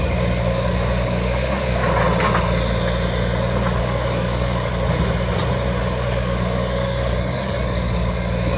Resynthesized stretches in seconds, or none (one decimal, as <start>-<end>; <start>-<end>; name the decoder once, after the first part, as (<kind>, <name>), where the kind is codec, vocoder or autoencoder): 0.0-1.8 (codec, DAC); 3.8-4.7; 5.8-8.6

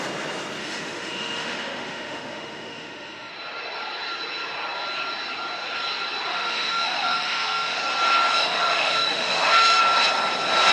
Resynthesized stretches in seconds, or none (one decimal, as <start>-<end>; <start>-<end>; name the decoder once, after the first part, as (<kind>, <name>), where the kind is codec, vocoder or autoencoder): 0.6-3.3 (autoencoder, DAC-VAE); 6.3-7.8; 8.3-9.8

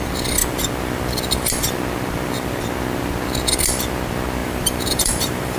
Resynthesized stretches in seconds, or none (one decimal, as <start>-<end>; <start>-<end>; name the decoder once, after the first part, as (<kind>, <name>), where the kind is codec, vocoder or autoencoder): 4.4-5.6 (vocoder, BigVGAN v2)

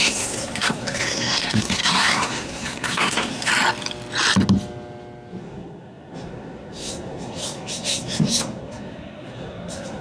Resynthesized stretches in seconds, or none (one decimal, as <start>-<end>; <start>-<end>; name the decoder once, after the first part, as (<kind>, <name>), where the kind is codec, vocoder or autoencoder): 0.0-3.5 (codec, SNAC); 5.4-10.0

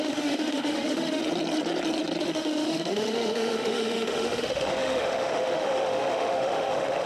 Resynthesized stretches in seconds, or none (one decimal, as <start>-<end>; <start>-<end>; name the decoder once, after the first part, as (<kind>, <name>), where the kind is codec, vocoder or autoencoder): 0.0-1.2 (autoencoder, DAC-VAE); 2.2-7.1

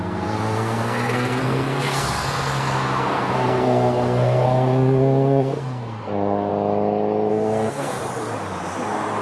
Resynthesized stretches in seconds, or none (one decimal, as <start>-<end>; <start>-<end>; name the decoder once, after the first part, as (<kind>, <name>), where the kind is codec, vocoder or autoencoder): 0.0-6.5 (codec, SNAC); 7.3-8.0

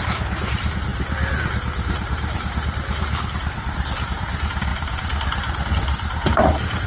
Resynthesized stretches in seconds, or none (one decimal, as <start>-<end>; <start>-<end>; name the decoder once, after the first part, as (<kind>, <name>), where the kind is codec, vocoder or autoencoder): 0.0-6.9 (vocoder, BigVGAN v2)

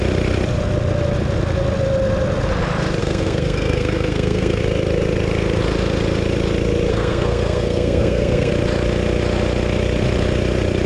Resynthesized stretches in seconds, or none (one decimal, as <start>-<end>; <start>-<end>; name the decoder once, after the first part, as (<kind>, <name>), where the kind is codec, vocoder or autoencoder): 3.0-4.6 (codec, SNAC); 6.9-8.5